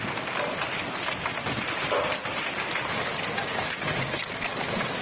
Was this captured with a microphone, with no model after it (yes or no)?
yes